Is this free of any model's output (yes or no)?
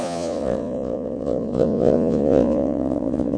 no